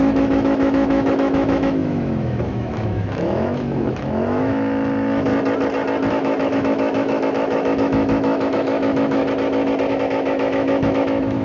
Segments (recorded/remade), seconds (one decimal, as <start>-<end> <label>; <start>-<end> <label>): 0.0-5.3 remade; 5.3-6.1 recorded; 6.1-9.2 remade; 9.2-9.9 recorded; 9.9-11.4 remade